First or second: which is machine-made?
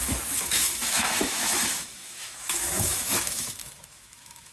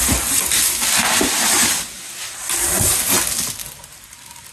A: first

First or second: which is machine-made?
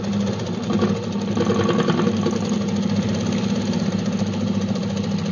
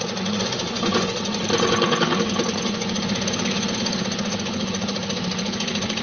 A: second